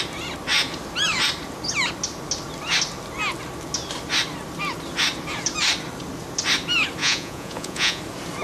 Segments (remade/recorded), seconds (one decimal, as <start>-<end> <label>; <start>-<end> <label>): 0.0-7.0 recorded; 7.0-8.0 remade; 8.0-8.4 recorded